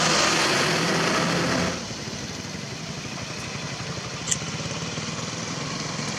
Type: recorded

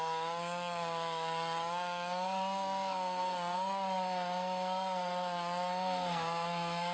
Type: remade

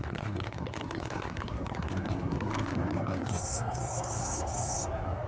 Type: remade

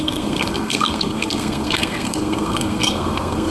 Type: remade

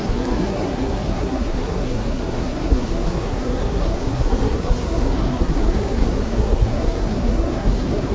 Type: remade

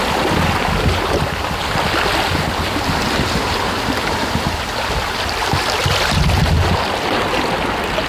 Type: recorded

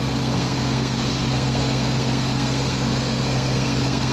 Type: remade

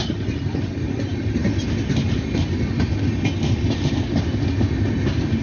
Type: recorded